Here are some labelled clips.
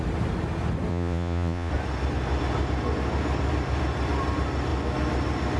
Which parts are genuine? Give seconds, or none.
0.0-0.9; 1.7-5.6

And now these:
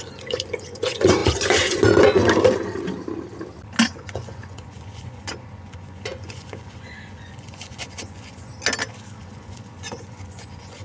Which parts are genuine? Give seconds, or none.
2.2-3.9; 8.5-9.2